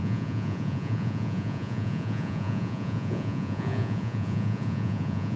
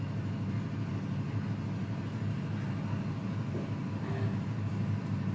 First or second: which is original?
second